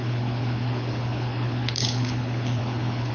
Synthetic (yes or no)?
yes